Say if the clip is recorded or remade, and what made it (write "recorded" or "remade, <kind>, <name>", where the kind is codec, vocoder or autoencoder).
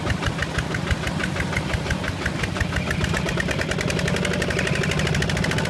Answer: recorded